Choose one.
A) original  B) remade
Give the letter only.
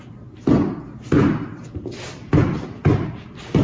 A